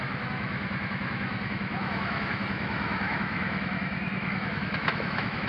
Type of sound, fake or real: fake